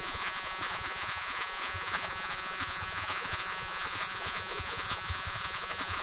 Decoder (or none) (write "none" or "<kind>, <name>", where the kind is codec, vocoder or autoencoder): vocoder, Vocos